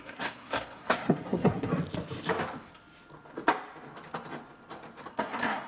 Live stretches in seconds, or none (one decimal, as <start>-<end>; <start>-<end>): 1.7-5.1